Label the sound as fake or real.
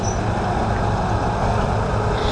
real